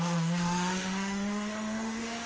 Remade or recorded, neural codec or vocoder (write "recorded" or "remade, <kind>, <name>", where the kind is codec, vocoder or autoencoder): remade, autoencoder, DAC-VAE